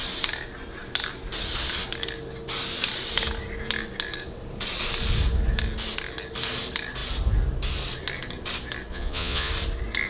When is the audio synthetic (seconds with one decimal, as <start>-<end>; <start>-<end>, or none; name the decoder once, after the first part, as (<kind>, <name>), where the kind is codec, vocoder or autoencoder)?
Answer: 8.9-9.5 (vocoder, Vocos)